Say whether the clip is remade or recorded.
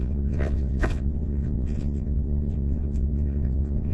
remade